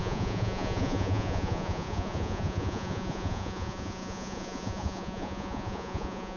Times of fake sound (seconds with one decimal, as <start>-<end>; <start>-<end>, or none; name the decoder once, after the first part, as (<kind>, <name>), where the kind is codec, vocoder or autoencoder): 0.0-6.4 (vocoder, Vocos)